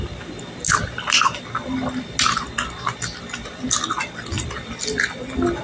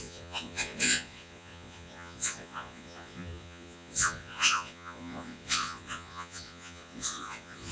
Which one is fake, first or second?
second